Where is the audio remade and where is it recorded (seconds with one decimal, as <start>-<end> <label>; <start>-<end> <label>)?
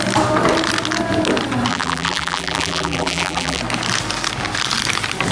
0.0-1.7 recorded; 1.7-3.6 remade; 3.6-5.3 recorded